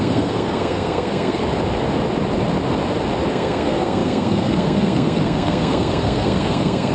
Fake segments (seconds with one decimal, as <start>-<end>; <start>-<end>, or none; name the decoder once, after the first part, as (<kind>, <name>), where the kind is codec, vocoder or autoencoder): 0.0-1.4 (codec, SNAC); 3.3-6.9